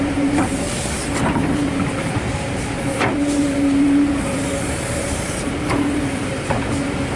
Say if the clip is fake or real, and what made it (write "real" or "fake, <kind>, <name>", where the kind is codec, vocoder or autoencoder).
fake, vocoder, BigVGAN v2